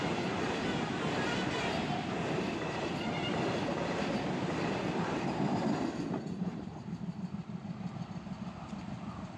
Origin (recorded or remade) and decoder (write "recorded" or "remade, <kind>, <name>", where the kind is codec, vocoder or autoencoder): remade, vocoder, BigVGAN v2